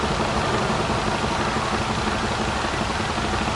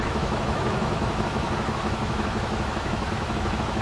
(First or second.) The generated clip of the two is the second